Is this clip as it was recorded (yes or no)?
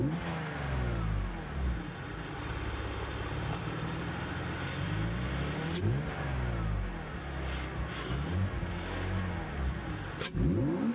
yes